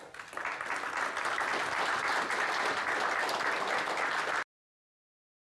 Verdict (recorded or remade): recorded